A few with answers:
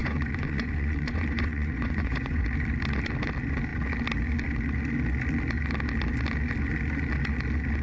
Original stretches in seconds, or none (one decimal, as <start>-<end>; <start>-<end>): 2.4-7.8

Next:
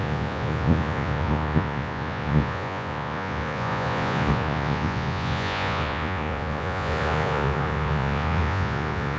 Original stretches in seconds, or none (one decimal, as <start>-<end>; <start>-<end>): none

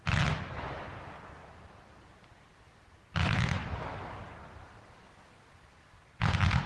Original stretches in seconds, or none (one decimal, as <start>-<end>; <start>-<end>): 0.0-6.7

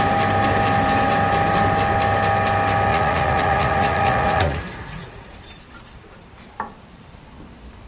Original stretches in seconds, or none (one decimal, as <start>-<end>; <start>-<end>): 0.0-2.9; 5.3-7.9

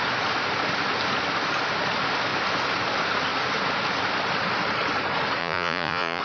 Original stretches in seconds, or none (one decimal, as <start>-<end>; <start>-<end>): 0.0-5.4